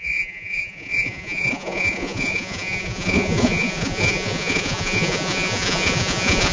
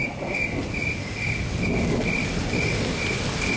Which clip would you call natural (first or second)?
second